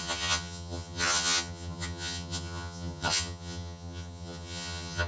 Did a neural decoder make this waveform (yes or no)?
yes